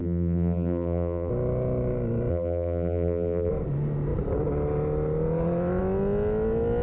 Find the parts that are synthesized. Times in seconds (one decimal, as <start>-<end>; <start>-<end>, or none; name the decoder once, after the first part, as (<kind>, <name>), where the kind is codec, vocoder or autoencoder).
0.0-1.3 (vocoder, BigVGAN v2); 2.3-3.5